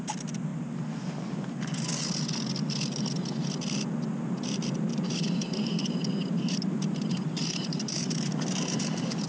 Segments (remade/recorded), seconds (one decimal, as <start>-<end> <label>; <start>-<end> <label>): 0.0-4.9 recorded; 4.9-8.8 remade; 8.8-9.3 recorded